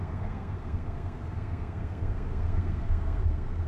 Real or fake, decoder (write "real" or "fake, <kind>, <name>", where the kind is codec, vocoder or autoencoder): fake, codec, SNAC